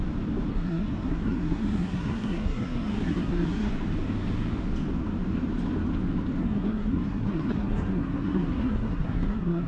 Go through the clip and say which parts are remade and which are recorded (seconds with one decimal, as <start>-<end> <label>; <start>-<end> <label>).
0.0-0.5 recorded; 0.5-3.7 remade; 3.7-6.4 recorded; 6.4-9.7 remade